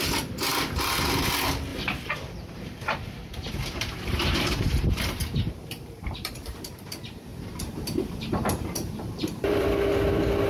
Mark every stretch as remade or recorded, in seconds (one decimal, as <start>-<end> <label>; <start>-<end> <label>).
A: 0.0-1.7 recorded; 1.7-6.6 remade; 6.6-7.3 recorded; 7.3-9.8 remade; 9.8-10.5 recorded